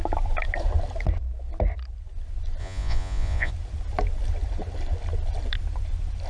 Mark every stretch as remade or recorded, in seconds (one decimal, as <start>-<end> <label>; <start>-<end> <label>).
0.0-2.6 recorded; 2.6-3.5 remade; 3.5-6.3 recorded